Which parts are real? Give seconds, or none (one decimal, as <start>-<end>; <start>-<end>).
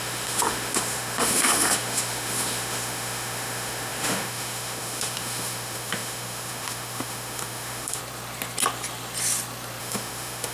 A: 8.0-9.8